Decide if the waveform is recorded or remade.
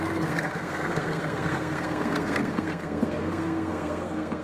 remade